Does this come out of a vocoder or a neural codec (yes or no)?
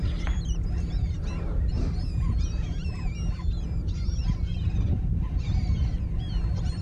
yes